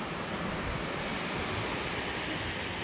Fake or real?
real